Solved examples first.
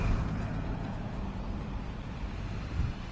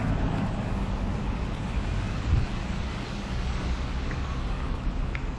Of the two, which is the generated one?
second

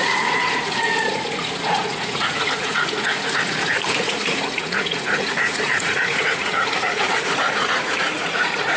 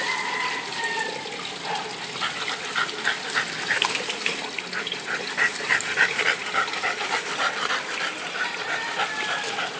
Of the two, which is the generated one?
first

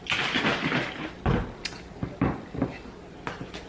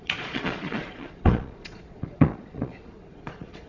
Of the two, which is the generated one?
second